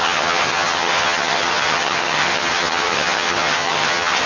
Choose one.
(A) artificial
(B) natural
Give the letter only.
A